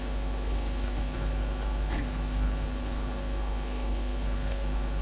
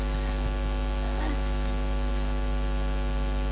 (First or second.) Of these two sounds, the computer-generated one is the first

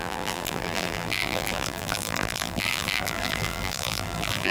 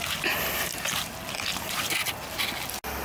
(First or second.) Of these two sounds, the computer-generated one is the first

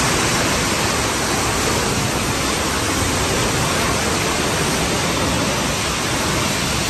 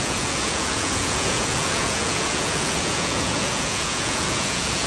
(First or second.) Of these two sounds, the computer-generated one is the second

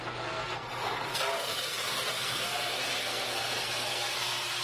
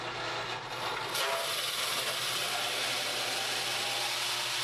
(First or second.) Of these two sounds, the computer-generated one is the first